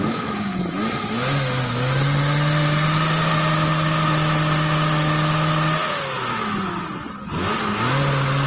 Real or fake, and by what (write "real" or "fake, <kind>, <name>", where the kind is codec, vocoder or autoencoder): real